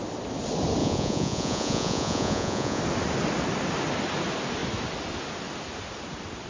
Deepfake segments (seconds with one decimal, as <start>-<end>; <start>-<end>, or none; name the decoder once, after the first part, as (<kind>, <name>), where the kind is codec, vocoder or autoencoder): 0.8-2.8 (vocoder, Vocos)